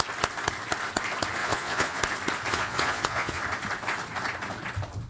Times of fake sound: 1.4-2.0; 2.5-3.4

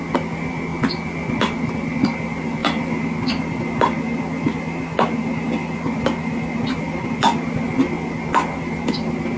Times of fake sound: none

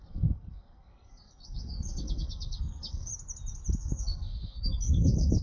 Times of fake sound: 0.0-3.1; 3.8-5.4

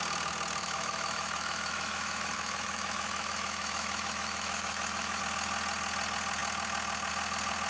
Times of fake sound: 0.6-5.2

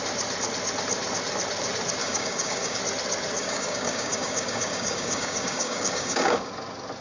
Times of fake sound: 2.0-2.8; 3.4-6.5

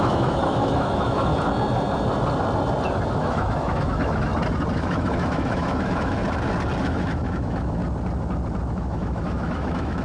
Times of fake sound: 0.0-1.3; 3.2-4.3; 4.8-6.2; 6.8-7.8; 8.7-10.0